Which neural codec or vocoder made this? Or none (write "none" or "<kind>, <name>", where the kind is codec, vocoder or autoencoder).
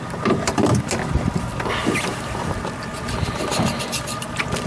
none